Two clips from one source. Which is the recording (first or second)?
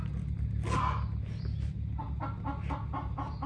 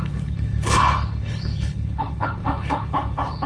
first